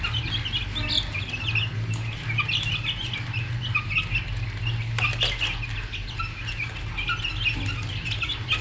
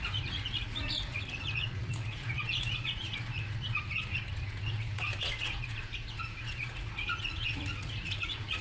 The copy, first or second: second